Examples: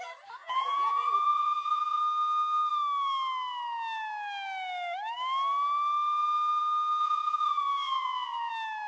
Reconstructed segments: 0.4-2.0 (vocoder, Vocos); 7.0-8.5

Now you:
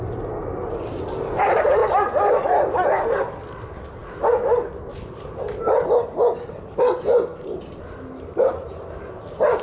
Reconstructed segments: none

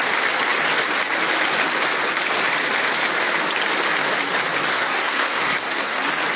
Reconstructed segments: 4.7-6.0 (codec, SNAC)

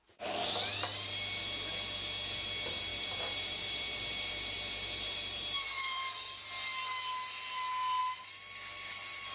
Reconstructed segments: 2.9-6.5 (vocoder, BigVGAN v2)

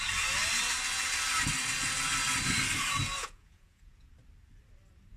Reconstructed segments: 3.2-4.1 (vocoder, Vocos)

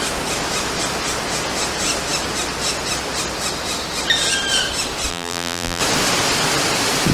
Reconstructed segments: 5.1-5.8 (vocoder, BigVGAN v2)

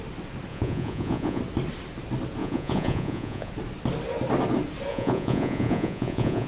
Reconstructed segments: 0.5-1.4 (vocoder, Vocos); 2.4-3.5; 4.9-6.5

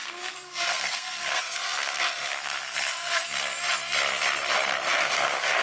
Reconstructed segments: 0.0-3.2 (codec, SNAC); 4.9-5.6